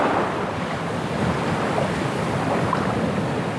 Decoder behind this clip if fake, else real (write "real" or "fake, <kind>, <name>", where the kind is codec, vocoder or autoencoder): real